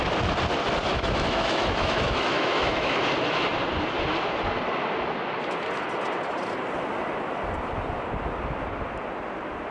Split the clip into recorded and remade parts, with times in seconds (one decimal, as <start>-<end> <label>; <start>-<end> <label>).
0.0-0.9 recorded; 0.9-3.1 remade; 3.1-9.7 recorded